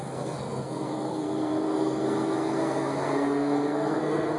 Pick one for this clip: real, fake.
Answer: fake